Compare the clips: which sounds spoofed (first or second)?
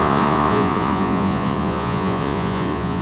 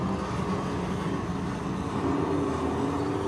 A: first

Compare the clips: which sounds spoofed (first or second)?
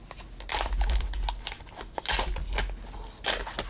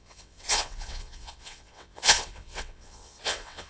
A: second